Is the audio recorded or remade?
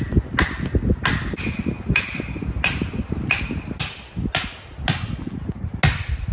recorded